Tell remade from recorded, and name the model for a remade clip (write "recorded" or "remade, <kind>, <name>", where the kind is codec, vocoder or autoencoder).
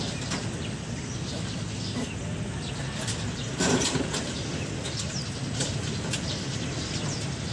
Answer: recorded